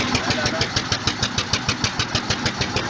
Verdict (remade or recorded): recorded